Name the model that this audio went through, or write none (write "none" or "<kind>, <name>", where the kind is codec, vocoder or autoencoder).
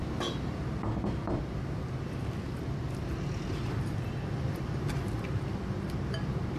none